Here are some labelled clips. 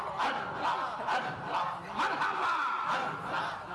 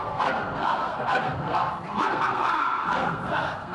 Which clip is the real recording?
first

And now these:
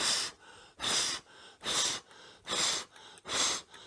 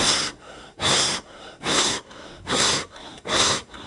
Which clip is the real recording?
first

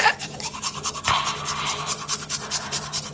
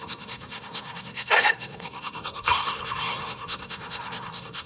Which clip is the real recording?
first